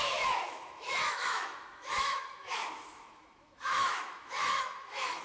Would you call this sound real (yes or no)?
no